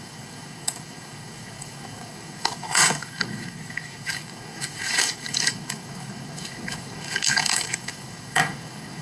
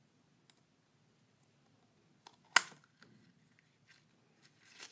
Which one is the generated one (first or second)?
first